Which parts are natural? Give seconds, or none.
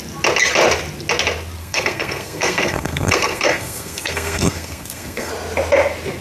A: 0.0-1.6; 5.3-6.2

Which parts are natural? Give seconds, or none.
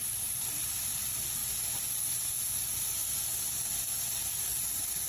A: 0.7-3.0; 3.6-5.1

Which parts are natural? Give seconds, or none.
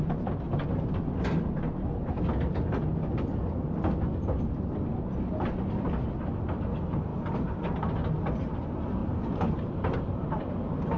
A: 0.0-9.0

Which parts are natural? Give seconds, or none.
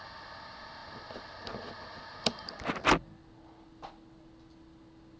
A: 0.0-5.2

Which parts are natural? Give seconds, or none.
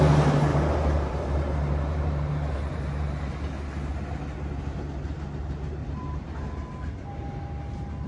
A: 0.0-0.5; 3.3-5.8; 6.8-8.1